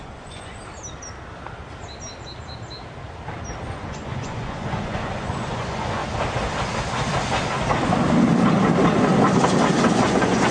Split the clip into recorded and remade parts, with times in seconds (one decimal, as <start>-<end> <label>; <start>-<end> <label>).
0.0-0.6 remade; 0.6-3.7 recorded; 3.7-6.0 remade; 6.0-9.9 recorded; 9.9-10.5 remade